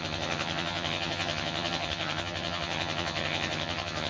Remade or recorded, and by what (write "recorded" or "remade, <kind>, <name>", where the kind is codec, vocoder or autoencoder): remade, vocoder, HiFi-GAN